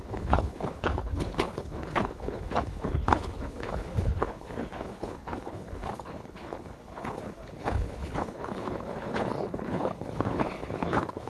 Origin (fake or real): fake